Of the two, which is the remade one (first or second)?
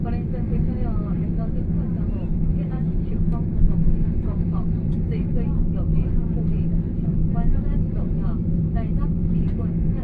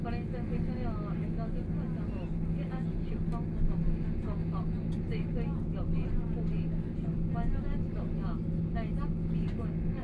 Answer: first